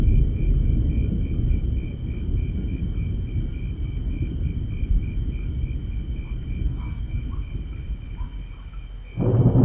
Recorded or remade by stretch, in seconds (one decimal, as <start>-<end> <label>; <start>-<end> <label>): 0.0-6.6 recorded; 6.6-7.2 remade; 7.2-9.6 recorded